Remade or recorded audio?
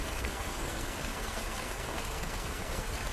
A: remade